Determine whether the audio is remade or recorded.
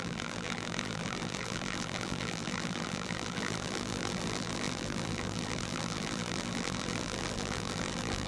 remade